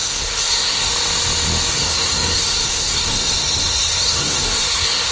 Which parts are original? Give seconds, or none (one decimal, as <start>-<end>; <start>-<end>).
0.9-1.7